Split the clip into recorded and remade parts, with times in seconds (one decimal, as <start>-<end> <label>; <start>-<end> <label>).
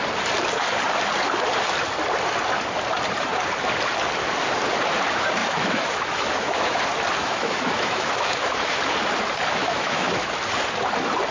0.0-5.4 recorded; 5.4-6.8 remade; 6.8-7.2 recorded; 7.2-8.8 remade; 8.8-9.6 recorded; 9.6-10.3 remade; 10.3-11.3 recorded